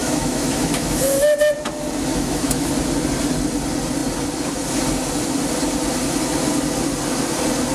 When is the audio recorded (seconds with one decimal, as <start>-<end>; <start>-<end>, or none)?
1.0-2.1; 2.7-7.7